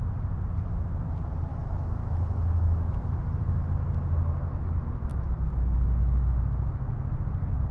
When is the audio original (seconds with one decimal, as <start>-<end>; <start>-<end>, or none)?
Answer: 0.0-1.5; 3.7-5.1; 6.5-7.7